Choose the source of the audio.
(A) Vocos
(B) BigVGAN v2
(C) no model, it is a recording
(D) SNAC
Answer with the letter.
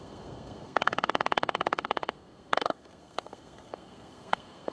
D